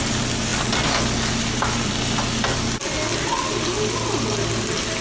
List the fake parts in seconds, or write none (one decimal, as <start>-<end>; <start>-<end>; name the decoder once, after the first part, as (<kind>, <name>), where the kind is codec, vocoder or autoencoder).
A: none